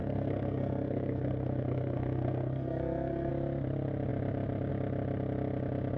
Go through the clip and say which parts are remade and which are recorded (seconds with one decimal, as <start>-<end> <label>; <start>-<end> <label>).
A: 0.0-3.3 remade; 3.3-6.0 recorded